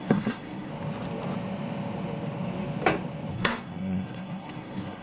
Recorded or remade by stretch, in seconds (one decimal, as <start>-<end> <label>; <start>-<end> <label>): 0.0-0.7 remade; 0.7-3.3 recorded; 3.3-5.0 remade